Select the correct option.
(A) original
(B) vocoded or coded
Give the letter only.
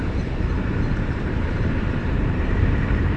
B